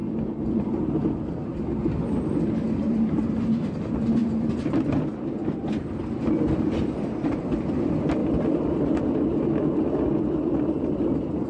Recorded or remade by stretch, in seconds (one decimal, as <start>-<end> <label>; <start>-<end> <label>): 0.0-11.5 recorded